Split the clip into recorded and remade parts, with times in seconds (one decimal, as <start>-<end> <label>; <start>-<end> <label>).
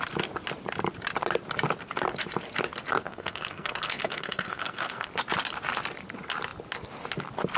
0.0-3.0 recorded; 3.0-5.1 remade; 5.1-7.6 recorded